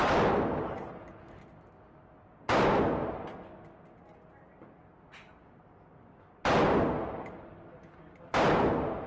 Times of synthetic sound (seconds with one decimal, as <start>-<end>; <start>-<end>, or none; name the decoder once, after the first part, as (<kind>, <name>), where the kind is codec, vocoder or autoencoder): none